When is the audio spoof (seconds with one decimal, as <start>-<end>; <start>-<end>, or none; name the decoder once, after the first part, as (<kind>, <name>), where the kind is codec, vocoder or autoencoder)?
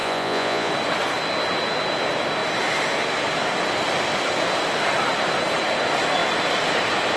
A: 0.0-0.7 (vocoder, Vocos)